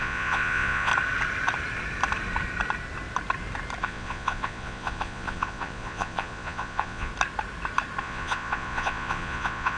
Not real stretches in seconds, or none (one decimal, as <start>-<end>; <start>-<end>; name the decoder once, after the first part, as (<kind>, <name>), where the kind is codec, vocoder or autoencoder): 0.0-0.9 (vocoder, Vocos); 3.8-7.1; 8.0-9.8